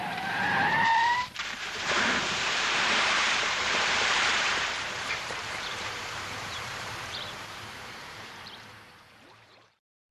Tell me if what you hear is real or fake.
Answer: fake